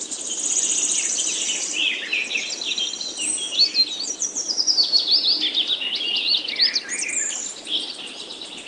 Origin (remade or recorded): recorded